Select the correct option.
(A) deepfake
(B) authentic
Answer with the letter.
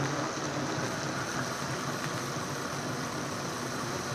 B